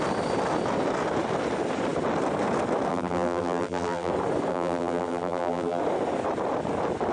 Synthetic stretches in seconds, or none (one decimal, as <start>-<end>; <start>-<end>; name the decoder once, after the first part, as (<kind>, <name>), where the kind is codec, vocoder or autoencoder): 2.9-4.1 (vocoder, BigVGAN v2); 4.5-5.8